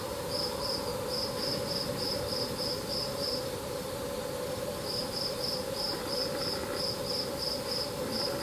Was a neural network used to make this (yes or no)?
yes